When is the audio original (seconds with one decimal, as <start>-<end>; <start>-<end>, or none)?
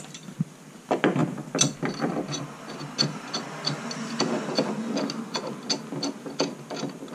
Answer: 0.0-7.1